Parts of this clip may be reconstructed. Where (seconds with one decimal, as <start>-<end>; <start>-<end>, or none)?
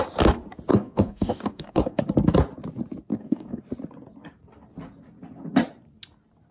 0.7-2.0; 3.1-3.6